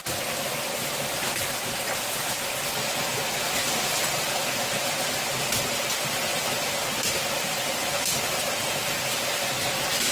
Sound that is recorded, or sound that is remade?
recorded